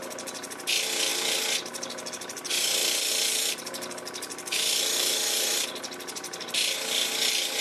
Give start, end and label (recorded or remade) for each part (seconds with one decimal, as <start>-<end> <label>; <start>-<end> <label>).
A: 0.0-2.8 recorded; 2.8-3.5 remade; 3.5-7.6 recorded